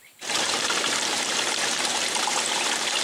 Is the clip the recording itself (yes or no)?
no